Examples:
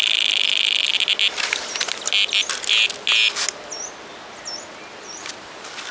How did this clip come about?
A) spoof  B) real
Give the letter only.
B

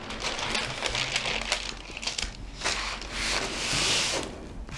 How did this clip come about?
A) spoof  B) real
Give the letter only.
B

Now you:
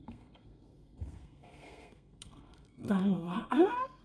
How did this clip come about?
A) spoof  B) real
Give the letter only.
A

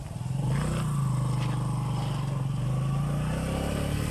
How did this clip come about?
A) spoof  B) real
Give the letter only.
B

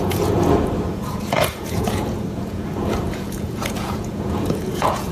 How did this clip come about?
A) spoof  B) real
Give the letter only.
A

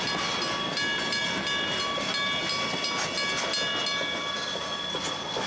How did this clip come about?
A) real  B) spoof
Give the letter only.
A